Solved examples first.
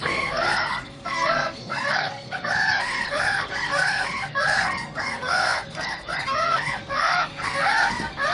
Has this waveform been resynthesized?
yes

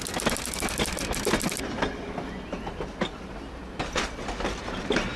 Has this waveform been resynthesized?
no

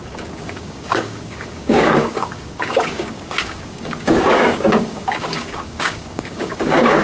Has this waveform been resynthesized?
yes